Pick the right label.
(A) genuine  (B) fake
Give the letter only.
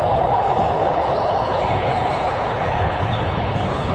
B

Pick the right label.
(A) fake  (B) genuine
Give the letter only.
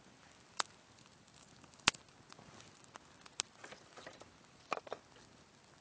B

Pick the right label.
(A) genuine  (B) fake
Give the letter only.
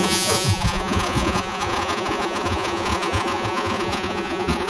B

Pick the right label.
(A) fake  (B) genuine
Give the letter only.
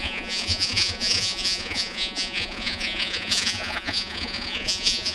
A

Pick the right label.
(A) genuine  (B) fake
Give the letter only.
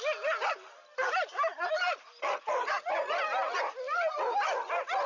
A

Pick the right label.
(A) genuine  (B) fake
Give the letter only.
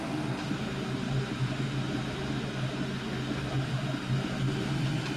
A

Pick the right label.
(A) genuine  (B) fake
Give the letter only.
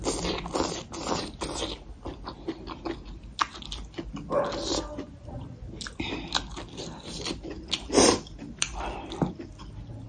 A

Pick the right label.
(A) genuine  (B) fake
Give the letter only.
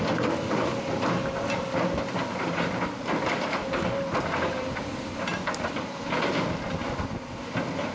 A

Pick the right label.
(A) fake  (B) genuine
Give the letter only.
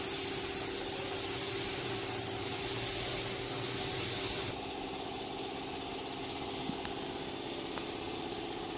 B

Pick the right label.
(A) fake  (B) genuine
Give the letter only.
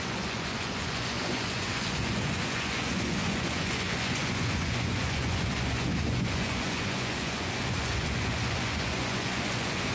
A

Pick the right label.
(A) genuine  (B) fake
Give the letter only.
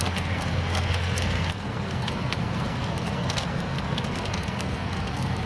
B